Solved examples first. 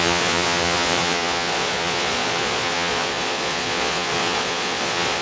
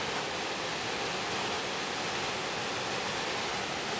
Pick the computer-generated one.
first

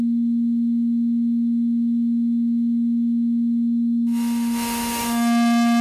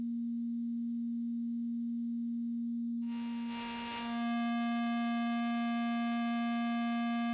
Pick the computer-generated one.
first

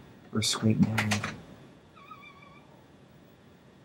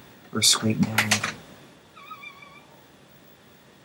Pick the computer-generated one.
first